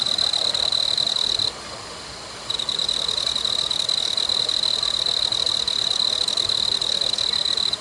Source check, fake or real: real